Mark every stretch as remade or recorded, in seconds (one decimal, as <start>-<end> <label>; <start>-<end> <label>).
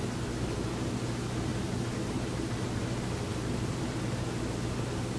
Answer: 0.0-3.3 recorded; 3.3-4.2 remade; 4.2-5.2 recorded